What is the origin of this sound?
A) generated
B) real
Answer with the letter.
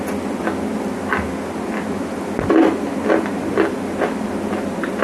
B